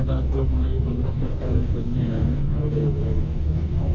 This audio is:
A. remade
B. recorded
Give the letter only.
A